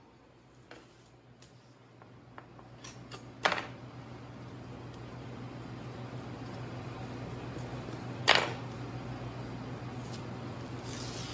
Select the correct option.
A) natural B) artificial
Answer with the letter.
A